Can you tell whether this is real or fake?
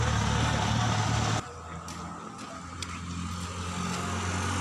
real